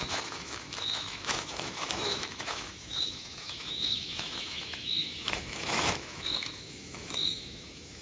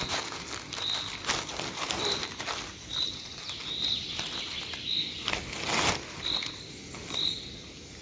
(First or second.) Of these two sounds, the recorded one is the second